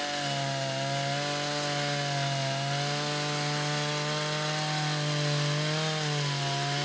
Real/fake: real